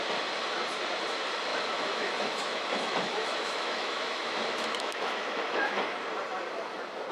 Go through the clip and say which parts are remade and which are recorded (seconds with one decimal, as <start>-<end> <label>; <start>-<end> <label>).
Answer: 0.0-1.5 recorded; 1.5-5.8 remade; 5.8-7.1 recorded